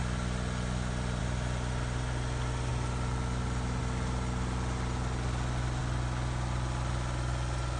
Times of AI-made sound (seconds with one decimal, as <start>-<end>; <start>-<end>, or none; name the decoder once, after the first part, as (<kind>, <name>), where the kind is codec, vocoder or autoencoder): none